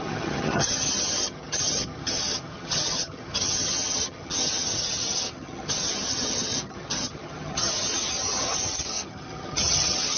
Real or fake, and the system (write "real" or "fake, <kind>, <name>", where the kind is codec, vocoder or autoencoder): fake, vocoder, HiFi-GAN